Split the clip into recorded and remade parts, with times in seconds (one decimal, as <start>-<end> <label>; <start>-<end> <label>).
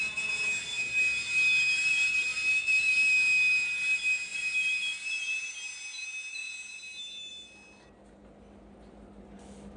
0.0-9.8 recorded